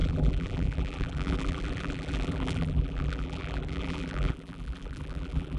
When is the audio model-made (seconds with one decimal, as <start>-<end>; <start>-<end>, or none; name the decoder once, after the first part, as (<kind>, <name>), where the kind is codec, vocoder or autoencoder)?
0.0-5.6 (vocoder, BigVGAN v2)